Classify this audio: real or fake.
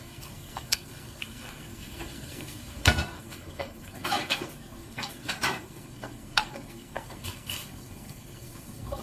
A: fake